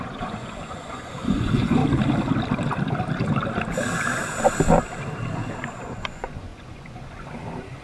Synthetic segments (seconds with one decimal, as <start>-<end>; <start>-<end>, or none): 0.0-1.8; 5.7-7.8